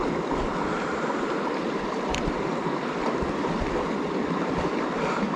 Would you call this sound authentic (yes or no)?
no